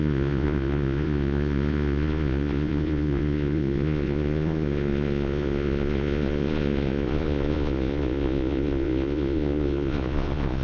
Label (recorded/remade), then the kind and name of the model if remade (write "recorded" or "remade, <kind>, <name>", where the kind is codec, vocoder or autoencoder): remade, vocoder, Vocos